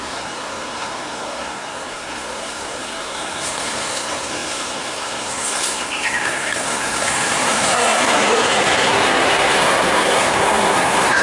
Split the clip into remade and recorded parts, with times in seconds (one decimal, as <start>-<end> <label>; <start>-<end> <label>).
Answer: 0.0-11.2 remade